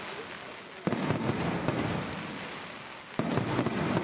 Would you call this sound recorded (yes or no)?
yes